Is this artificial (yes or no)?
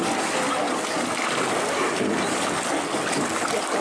no